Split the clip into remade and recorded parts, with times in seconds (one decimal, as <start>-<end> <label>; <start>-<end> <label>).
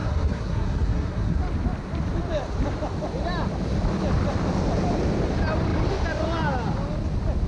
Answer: 0.0-1.4 remade; 1.4-7.5 recorded